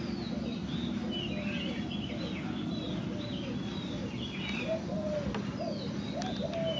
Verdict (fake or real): real